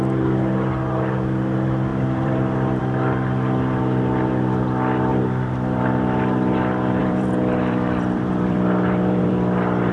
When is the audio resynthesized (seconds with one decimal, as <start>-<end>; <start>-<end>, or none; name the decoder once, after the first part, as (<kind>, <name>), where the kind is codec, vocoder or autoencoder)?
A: 1.9-2.8 (vocoder, BigVGAN v2); 7.0-9.3

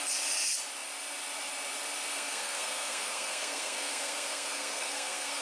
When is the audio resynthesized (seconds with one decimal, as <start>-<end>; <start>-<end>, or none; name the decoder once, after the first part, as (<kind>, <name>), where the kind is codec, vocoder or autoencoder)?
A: 2.1-5.4 (codec, SNAC)

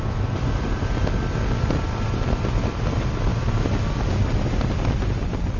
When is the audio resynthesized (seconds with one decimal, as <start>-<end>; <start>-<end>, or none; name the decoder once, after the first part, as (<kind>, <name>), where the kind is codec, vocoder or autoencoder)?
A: none